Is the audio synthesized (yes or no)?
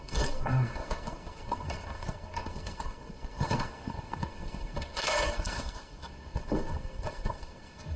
yes